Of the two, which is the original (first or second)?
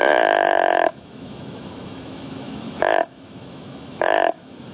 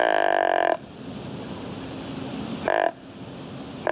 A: second